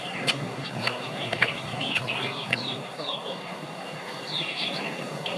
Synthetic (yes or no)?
yes